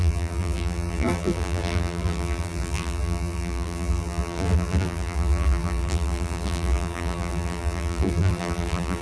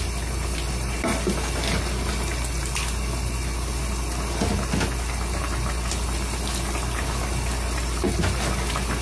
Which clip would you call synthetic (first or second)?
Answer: first